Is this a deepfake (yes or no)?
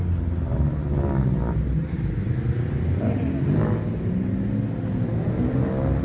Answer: no